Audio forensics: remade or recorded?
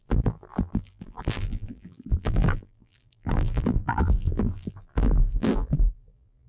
remade